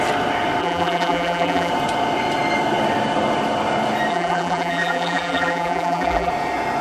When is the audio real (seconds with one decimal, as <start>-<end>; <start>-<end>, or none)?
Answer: 0.0-0.6; 1.7-4.1; 6.3-6.8